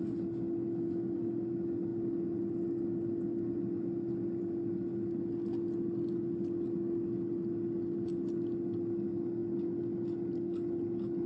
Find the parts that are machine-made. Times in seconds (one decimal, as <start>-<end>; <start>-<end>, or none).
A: none